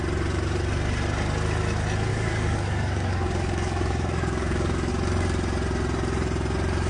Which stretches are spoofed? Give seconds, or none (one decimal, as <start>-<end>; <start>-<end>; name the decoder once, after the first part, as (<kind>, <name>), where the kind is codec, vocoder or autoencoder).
2.1-4.9 (codec, DAC)